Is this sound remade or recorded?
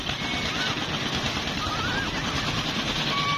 recorded